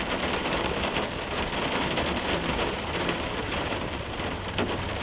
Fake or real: real